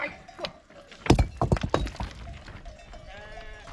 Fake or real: real